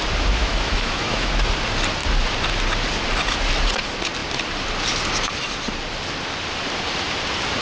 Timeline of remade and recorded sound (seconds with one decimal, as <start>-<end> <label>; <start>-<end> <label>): 0.0-0.4 recorded; 0.4-1.3 remade; 1.3-7.6 recorded